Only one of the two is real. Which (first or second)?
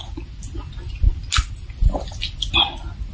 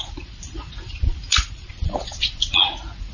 first